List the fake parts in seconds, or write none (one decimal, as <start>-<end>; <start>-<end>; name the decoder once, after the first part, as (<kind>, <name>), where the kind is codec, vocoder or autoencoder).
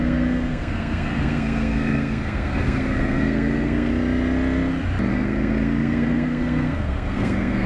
0.0-3.9 (codec, SNAC); 5.1-7.7